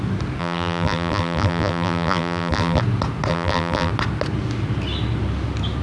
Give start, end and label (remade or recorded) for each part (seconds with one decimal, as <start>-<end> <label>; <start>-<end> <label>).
0.0-0.4 recorded; 0.4-2.8 remade; 2.8-3.3 recorded; 3.3-3.9 remade; 3.9-5.8 recorded